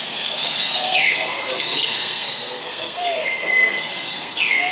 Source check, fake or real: fake